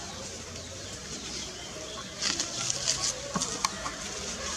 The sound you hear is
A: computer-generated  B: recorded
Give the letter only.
B